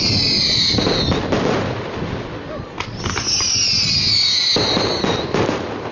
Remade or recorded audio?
recorded